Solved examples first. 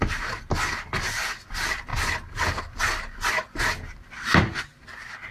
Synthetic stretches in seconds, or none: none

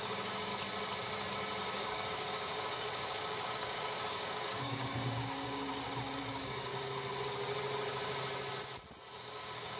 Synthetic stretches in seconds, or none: 0.0-0.5 (codec, DAC); 1.6-5.7; 6.3-6.7; 9.2-9.8

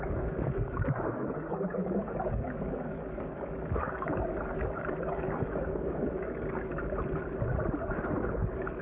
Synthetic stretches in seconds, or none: 0.0-6.7 (codec, DAC); 7.8-8.8

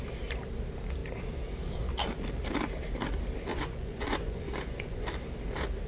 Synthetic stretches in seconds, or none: 3.5-5.0 (vocoder, Vocos)

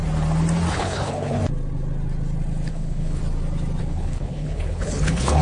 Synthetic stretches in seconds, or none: 0.7-1.4 (codec, HILCodec); 2.7-3.2; 3.8-5.4

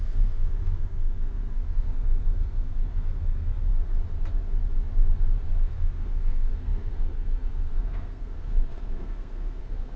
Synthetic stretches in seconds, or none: 0.0-3.7 (codec, SNAC); 5.5-10.0

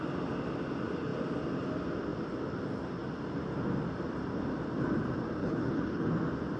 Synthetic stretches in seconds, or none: 5.4-6.1 (codec, HILCodec)

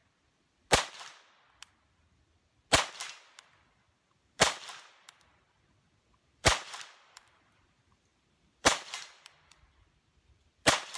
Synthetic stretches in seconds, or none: 3.5-11.0 (vocoder, BigVGAN v2)